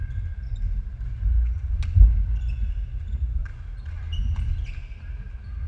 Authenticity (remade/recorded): recorded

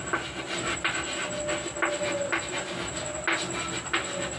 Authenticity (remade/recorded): recorded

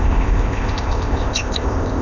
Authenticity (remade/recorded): remade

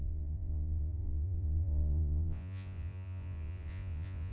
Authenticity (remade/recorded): remade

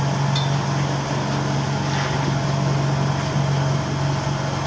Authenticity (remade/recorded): recorded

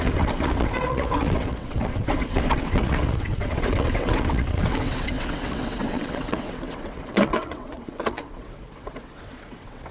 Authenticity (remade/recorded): remade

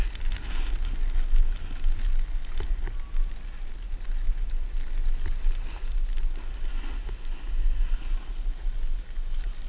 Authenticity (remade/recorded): recorded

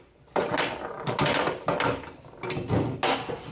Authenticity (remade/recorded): recorded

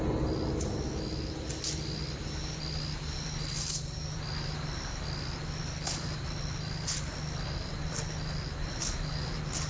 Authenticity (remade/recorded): recorded